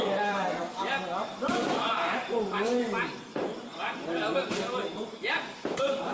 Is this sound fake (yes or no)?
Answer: yes